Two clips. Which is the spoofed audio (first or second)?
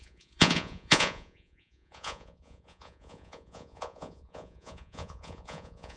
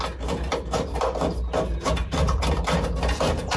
first